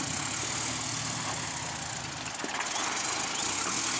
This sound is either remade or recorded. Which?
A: recorded